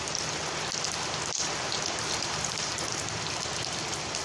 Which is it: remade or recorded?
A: recorded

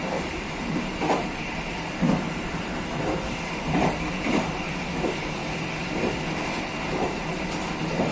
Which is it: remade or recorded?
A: remade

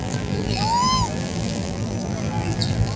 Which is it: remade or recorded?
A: remade